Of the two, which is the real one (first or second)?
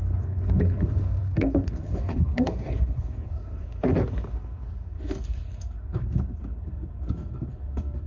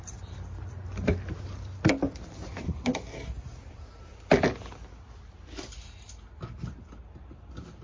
second